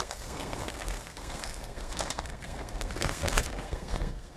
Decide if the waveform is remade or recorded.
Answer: remade